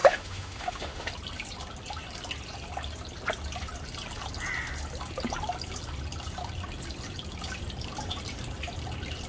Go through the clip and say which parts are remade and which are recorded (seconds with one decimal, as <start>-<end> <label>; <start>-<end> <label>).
0.0-1.1 remade; 1.1-9.3 recorded